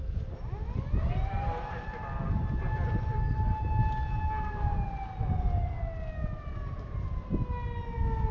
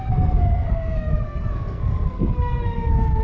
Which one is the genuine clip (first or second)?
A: first